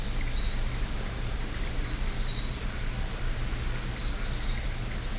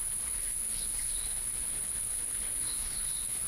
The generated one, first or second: second